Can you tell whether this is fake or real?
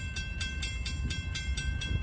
fake